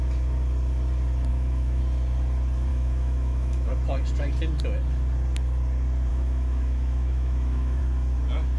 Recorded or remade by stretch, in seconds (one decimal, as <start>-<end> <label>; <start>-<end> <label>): 0.0-1.3 recorded; 1.3-1.8 remade; 1.8-2.7 recorded; 2.7-3.7 remade; 3.7-6.1 recorded; 6.1-7.8 remade; 7.8-8.6 recorded